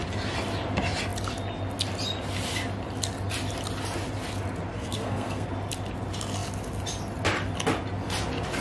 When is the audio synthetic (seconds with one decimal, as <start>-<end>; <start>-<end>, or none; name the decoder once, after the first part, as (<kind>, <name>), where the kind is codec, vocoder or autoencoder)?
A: 4.7-5.5 (codec, SNAC)